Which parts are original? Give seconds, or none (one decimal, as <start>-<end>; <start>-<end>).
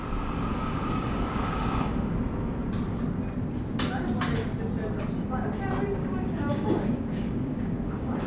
0.0-0.5; 2.2-6.0